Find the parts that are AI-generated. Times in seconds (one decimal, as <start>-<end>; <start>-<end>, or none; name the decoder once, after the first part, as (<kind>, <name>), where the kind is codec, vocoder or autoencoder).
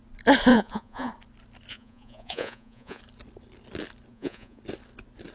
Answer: 0.5-1.1 (vocoder, Vocos); 1.7-3.0; 4.1-4.6